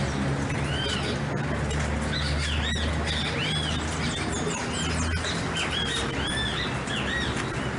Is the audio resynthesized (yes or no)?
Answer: no